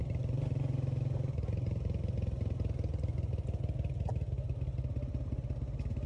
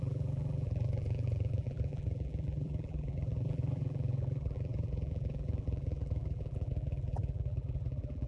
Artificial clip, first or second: second